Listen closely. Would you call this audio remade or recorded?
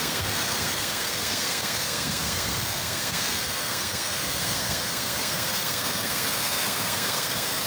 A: remade